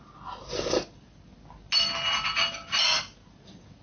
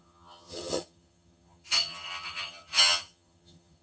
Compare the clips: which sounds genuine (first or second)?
first